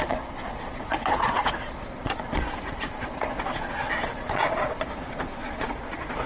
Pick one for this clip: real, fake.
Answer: fake